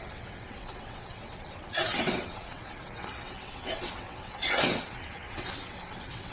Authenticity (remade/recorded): remade